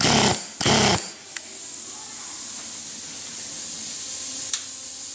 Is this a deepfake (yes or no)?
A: no